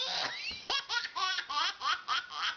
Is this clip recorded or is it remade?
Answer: recorded